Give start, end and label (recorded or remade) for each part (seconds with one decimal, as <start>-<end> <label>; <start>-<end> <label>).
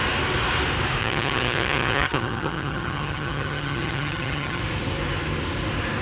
0.0-1.0 recorded; 1.0-4.6 remade; 4.6-6.0 recorded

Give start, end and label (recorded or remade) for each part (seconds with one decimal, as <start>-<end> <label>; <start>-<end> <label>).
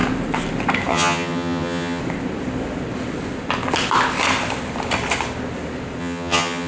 0.0-0.9 recorded; 0.9-2.0 remade; 2.0-6.0 recorded; 6.0-6.7 remade